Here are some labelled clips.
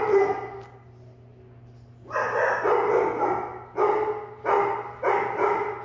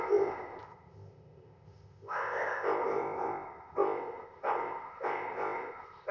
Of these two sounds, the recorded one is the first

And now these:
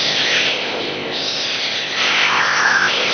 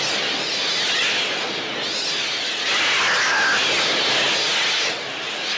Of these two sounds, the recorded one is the second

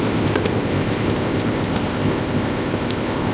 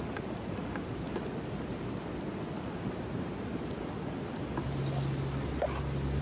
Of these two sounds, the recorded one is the second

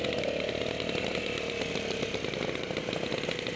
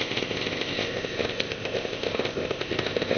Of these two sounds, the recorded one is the first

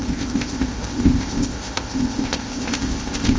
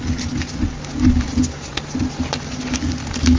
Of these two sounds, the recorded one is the second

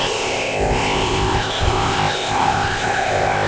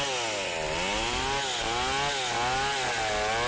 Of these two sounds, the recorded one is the second